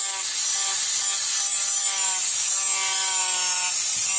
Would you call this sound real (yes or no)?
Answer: yes